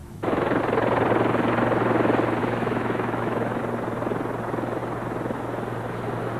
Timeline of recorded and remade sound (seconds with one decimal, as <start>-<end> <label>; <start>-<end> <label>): 0.0-0.6 remade; 0.6-2.4 recorded; 2.4-3.6 remade; 3.6-6.4 recorded